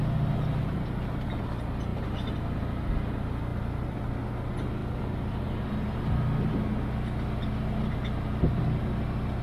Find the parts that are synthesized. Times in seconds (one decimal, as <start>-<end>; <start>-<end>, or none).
3.5-4.1; 4.8-6.5